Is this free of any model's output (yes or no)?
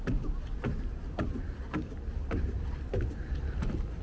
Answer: yes